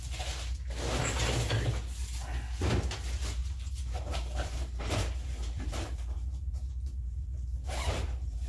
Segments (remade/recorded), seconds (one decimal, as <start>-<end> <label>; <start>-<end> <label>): 0.0-3.4 recorded; 3.4-8.5 remade